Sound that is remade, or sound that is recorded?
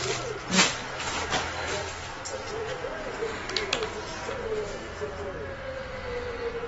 recorded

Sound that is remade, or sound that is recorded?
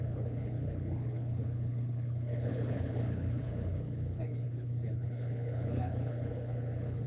remade